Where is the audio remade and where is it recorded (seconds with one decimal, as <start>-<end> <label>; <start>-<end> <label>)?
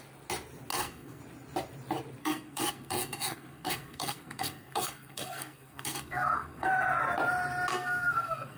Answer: 0.0-0.7 recorded; 0.7-1.2 remade; 1.2-2.2 recorded; 2.2-6.7 remade; 6.7-7.7 recorded; 7.7-8.6 remade